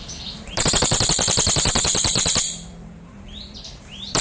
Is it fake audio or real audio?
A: fake